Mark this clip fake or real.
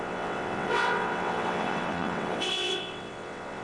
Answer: fake